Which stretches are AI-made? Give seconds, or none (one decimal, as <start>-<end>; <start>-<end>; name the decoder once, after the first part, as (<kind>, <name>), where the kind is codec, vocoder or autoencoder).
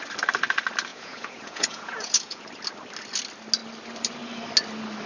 0.9-2.4 (vocoder, Vocos)